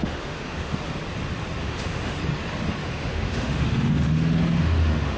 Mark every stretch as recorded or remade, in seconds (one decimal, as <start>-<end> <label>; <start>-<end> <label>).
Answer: 0.0-0.7 remade; 0.7-1.6 recorded; 1.6-2.2 remade; 2.2-2.8 recorded; 2.8-5.2 remade